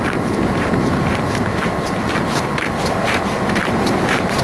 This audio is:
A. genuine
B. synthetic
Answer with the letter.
B